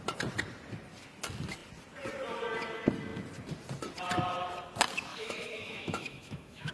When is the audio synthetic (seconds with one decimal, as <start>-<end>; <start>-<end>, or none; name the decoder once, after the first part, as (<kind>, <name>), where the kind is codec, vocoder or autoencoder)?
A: 5.1-6.7 (autoencoder, DAC-VAE)